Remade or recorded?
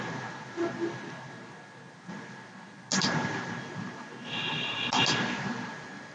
recorded